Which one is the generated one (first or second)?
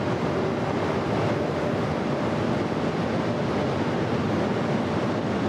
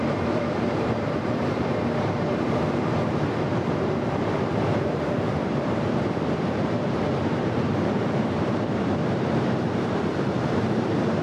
second